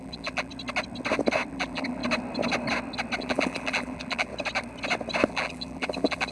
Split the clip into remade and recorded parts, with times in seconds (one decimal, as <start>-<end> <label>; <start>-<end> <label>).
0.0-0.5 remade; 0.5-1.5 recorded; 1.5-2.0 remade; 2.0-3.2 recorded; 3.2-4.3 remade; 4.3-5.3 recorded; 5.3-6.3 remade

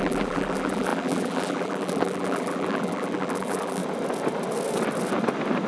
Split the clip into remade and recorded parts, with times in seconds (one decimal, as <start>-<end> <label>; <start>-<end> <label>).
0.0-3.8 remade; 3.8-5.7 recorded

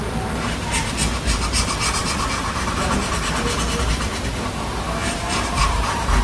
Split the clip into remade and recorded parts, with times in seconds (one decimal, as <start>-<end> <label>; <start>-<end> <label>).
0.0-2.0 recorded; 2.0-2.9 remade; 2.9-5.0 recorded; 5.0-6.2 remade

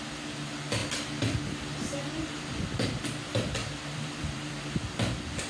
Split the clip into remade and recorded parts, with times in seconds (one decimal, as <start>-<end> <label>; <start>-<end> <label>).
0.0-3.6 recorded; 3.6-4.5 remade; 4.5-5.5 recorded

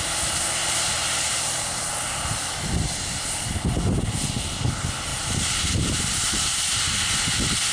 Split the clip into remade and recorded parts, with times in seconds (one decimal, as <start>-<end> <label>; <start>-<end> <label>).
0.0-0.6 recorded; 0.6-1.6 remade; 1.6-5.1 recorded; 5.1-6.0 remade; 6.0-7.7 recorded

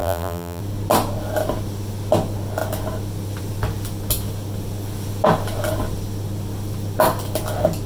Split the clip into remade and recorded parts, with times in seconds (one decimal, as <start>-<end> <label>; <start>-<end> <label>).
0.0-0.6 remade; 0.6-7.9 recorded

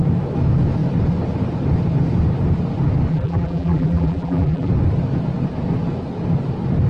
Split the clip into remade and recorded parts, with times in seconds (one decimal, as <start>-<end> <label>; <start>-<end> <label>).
0.0-3.1 recorded; 3.1-4.7 remade; 4.7-6.9 recorded